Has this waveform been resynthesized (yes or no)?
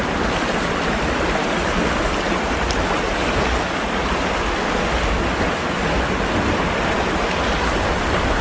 no